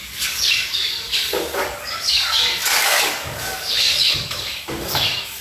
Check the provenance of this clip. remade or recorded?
remade